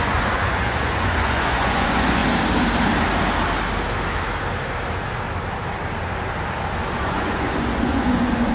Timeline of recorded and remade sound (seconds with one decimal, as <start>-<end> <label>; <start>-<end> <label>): 0.0-2.2 remade; 2.2-7.0 recorded; 7.0-8.5 remade